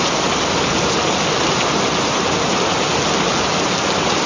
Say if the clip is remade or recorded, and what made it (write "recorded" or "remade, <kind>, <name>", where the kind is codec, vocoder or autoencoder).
recorded